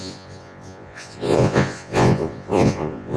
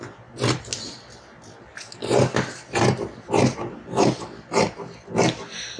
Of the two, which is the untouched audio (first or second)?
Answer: second